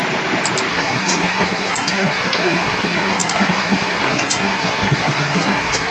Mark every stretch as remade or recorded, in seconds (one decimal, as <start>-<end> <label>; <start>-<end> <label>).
0.0-0.7 recorded; 0.7-5.9 remade